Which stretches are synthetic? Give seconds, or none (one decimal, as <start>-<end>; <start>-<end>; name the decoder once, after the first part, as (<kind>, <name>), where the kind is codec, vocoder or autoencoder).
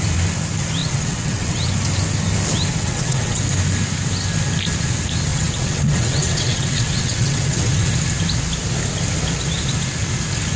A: 0.8-1.7 (vocoder, WaveNeXt); 2.8-3.4; 5.3-7.9